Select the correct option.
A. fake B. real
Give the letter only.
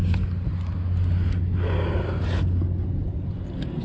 B